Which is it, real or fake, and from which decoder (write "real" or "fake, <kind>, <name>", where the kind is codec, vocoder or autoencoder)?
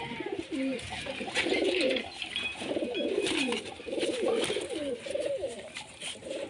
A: fake, vocoder, BigVGAN v2